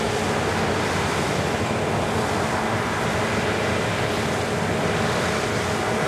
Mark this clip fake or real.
real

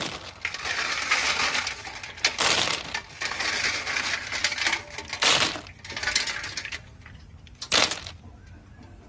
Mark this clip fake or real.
real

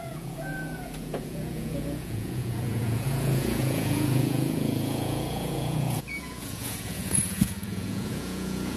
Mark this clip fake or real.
fake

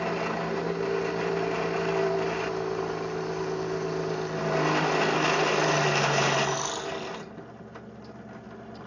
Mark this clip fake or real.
real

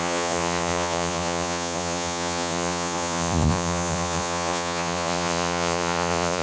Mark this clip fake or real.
fake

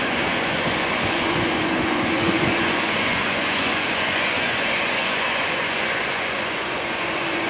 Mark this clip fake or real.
fake